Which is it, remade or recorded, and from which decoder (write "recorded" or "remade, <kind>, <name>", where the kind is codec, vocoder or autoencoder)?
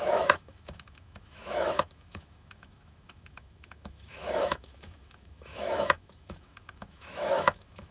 remade, autoencoder, DAC-VAE